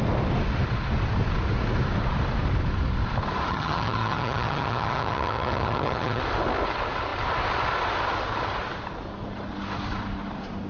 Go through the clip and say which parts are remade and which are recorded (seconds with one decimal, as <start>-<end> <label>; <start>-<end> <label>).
0.0-3.5 recorded; 3.5-6.2 remade; 6.2-10.7 recorded